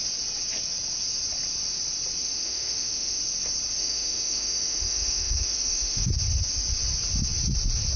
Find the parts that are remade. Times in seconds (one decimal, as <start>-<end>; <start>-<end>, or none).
2.2-3.2; 3.8-6.1